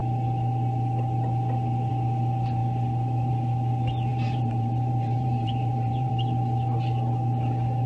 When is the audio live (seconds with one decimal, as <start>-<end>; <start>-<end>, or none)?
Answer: 0.0-4.1; 6.1-7.9